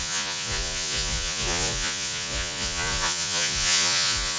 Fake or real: fake